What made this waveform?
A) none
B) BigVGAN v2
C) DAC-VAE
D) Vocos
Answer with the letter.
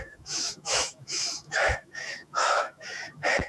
C